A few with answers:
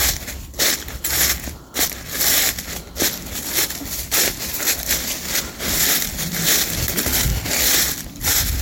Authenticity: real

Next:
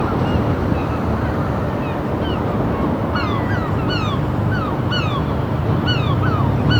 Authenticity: real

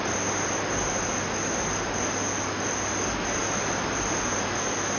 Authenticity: real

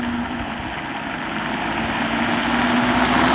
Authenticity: real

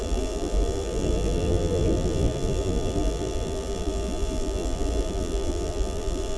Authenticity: fake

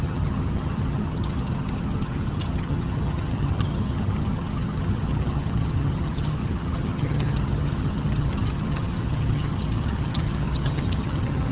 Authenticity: fake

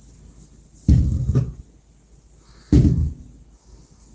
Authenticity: real